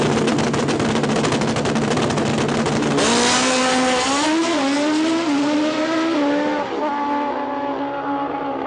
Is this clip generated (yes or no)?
no